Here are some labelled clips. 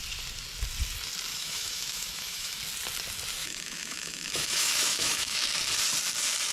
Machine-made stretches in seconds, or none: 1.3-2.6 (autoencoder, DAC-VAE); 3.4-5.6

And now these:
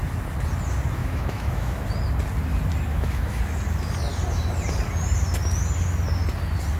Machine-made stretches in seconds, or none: 1.0-1.8 (autoencoder, DAC-VAE); 2.9-3.4

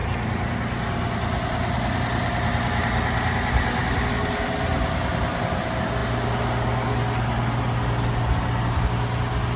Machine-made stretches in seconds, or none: none

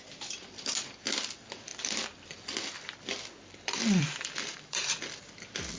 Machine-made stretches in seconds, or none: 1.7-5.2 (vocoder, BigVGAN v2)

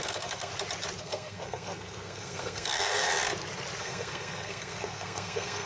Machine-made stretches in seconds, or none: 0.0-0.5 (codec, SNAC); 1.0-3.1; 3.8-5.7

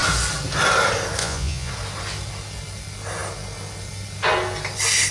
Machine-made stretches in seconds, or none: 1.2-1.7 (vocoder, Vocos)

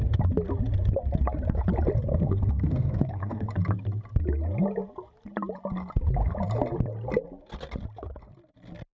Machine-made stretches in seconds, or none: 2.1-3.5 (codec, SNAC)